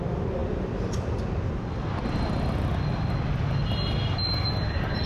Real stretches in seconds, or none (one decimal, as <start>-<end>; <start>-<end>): 0.0-5.1